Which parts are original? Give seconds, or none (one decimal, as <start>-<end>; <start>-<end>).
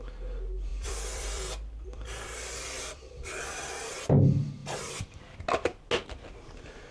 0.0-0.7; 3.9-4.6; 5.4-6.9